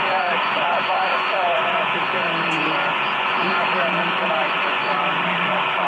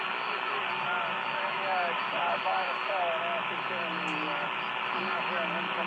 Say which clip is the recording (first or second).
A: second